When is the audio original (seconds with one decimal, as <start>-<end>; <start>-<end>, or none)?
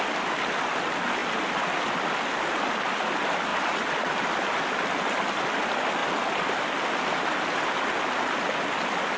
0.0-9.2